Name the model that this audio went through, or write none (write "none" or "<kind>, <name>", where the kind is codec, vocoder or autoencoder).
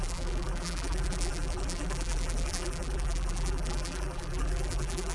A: vocoder, BigVGAN v2